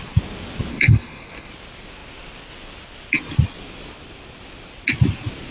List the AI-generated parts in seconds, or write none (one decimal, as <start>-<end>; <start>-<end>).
0.7-1.5